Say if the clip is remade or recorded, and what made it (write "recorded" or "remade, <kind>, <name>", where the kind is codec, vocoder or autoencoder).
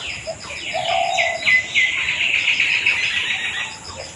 recorded